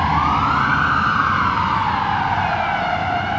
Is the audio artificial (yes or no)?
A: no